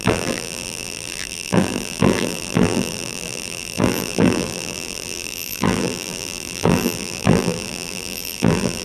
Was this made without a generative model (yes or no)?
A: no